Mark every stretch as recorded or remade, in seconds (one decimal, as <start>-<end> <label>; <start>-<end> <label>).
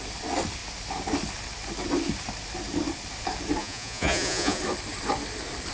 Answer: 0.0-3.6 recorded; 3.6-4.6 remade; 4.6-5.7 recorded